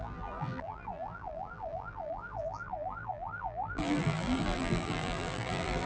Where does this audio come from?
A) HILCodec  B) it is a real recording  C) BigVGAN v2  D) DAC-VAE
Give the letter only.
C